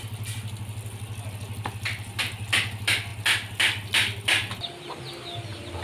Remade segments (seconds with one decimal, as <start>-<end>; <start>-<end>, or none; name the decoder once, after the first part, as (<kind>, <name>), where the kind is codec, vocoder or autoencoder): none